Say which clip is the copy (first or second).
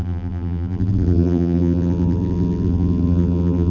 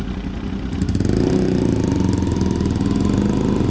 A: first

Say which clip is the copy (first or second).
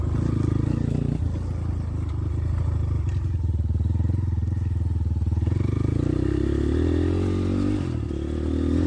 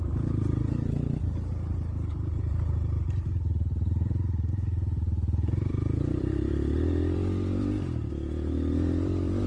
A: second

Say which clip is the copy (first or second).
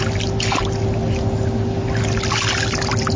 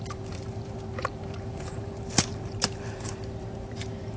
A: second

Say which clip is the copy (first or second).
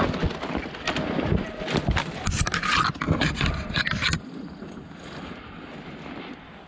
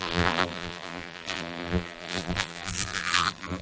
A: second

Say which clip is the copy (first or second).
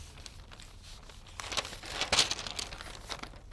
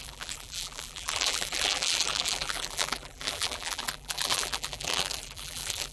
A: second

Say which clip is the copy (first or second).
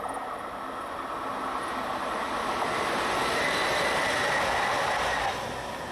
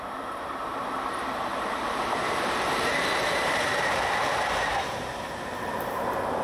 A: second